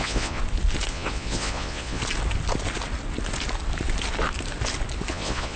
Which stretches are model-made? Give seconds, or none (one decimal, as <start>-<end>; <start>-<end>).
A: 0.0-0.4; 0.9-2.0; 5.1-5.6